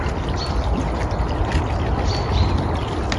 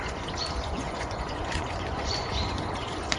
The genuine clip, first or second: first